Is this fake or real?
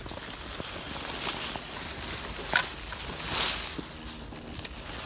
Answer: real